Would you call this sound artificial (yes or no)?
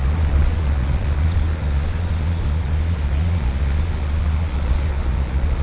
yes